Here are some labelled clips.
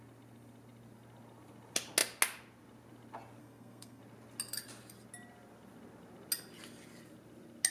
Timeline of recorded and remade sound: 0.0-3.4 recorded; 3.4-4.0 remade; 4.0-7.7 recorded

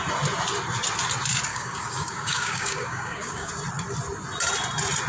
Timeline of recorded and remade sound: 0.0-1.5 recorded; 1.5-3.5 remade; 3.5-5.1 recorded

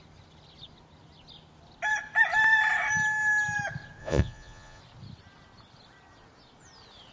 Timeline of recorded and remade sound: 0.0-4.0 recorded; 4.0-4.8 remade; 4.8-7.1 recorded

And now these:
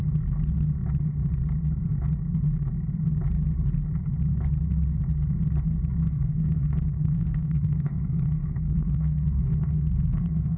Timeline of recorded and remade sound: 0.0-6.0 recorded; 6.0-10.6 remade

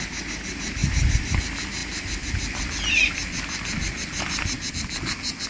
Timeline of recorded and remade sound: 0.0-5.5 recorded

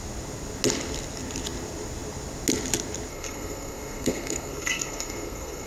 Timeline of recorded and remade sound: 0.0-3.1 recorded; 3.1-5.7 remade

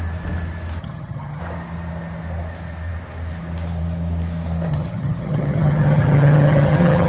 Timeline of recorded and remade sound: 0.0-0.8 recorded; 0.8-1.4 remade; 1.4-4.7 recorded; 4.7-7.1 remade

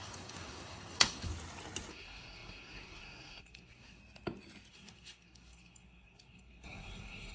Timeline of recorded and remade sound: 0.0-1.3 remade; 1.3-1.9 recorded; 1.9-4.0 remade; 4.0-4.7 recorded; 4.7-7.3 remade